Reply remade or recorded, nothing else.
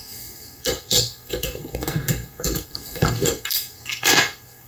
remade